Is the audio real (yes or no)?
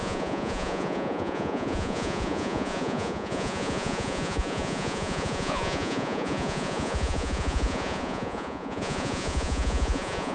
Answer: no